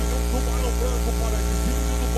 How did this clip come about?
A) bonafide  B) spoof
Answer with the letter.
A